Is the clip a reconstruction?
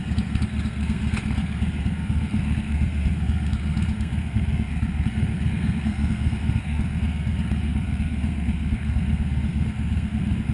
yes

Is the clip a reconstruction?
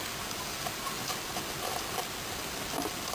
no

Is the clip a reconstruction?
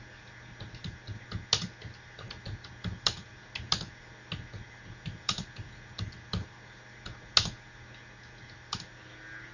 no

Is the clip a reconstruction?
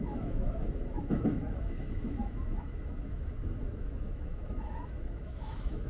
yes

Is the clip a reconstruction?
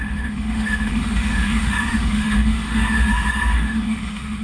yes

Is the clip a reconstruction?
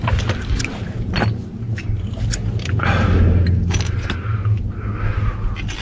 no